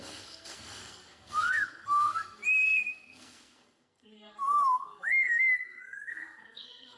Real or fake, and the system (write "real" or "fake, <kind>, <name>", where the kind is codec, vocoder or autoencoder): fake, codec, SNAC